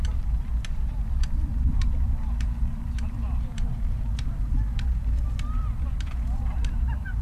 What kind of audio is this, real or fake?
fake